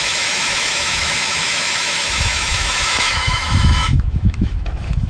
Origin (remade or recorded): remade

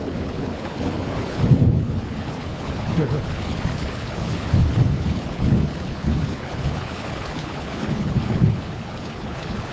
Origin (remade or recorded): remade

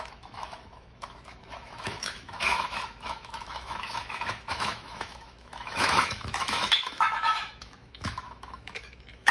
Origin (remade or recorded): remade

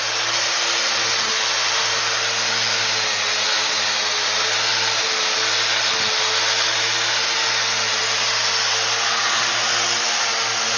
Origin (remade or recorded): recorded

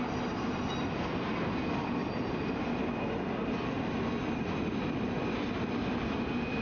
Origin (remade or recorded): recorded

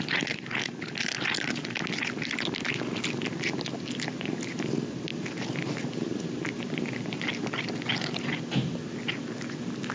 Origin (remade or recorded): recorded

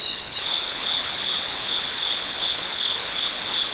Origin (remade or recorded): remade